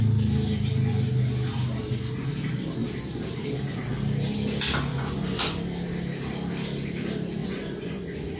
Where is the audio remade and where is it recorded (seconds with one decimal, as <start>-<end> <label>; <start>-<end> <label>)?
0.0-4.9 recorded; 4.9-5.6 remade; 5.6-7.4 recorded; 7.4-8.4 remade